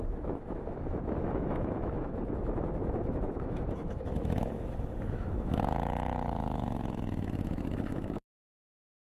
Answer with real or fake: fake